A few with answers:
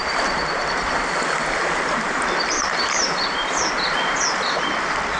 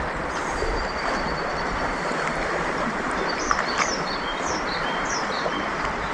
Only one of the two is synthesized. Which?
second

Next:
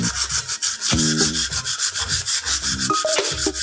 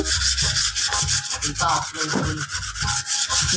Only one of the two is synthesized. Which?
first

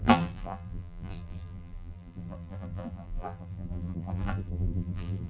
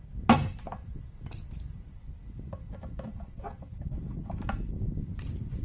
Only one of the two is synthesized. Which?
first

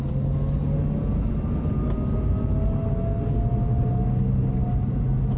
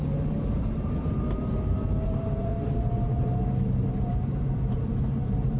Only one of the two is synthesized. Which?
second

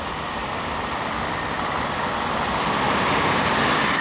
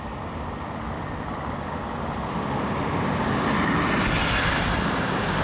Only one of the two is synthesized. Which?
first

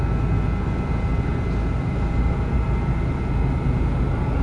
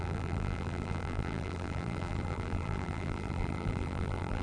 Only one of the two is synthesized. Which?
second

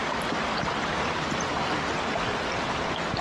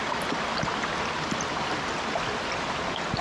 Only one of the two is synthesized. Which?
first